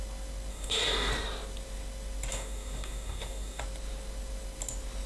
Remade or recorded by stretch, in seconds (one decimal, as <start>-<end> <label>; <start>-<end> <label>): 0.0-0.5 recorded; 0.5-1.1 remade; 1.1-2.3 recorded; 2.3-3.6 remade; 3.6-5.1 recorded